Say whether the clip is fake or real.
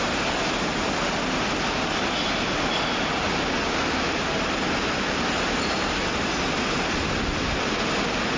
real